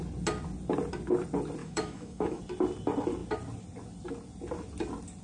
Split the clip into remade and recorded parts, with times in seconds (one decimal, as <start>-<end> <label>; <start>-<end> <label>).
0.0-1.6 recorded; 1.6-2.4 remade; 2.4-5.2 recorded